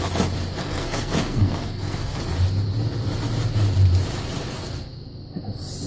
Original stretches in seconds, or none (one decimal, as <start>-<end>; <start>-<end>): 0.0-0.6; 2.2-5.9